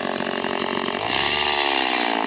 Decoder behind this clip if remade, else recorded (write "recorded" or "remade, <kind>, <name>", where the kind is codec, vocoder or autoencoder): recorded